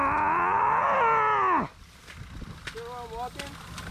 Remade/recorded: recorded